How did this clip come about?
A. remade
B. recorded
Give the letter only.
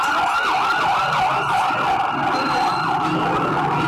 B